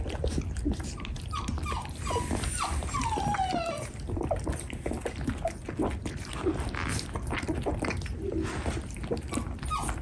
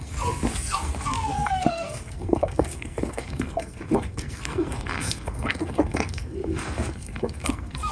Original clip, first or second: first